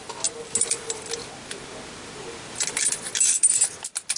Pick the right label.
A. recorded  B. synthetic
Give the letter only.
A